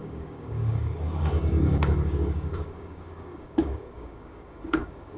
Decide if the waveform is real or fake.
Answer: fake